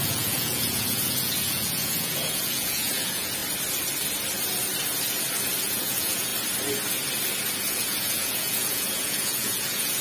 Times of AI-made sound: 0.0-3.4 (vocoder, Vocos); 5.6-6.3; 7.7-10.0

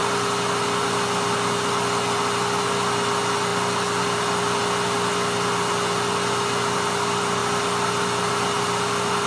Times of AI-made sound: none

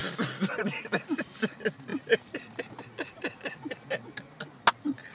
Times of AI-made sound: none

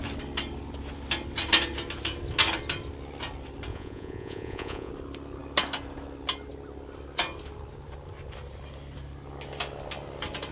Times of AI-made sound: 3.7-4.9 (vocoder, Vocos)

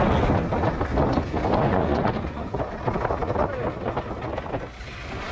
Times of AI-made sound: 1.7-2.8 (vocoder, Vocos)

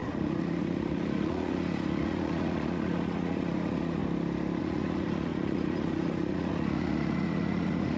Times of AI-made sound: 0.0-4.0 (vocoder, Vocos); 4.6-8.0

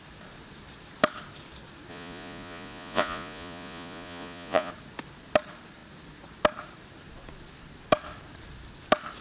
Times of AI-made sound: 1.9-4.7 (vocoder, Vocos)

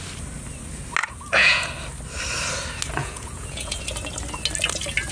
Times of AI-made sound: 1.0-1.6 (vocoder, Vocos); 3.0-3.8